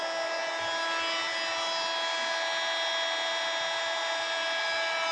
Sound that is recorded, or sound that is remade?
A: recorded